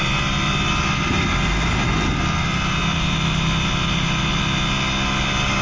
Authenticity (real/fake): real